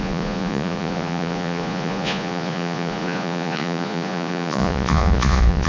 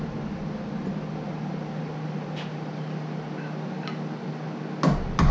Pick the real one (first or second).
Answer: second